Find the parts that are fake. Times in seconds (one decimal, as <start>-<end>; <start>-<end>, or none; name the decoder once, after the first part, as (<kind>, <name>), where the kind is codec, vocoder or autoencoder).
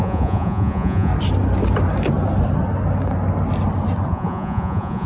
0.0-1.1 (vocoder, Vocos); 4.1-5.1